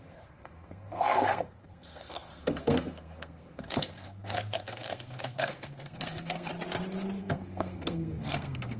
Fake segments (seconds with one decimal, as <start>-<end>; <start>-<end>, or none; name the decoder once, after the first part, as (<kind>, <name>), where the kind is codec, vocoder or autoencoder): 0.0-6.5 (codec, SNAC); 7.2-8.8